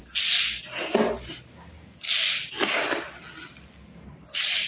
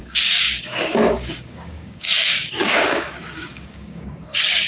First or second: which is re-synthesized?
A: second